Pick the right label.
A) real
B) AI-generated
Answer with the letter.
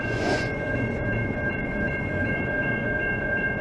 B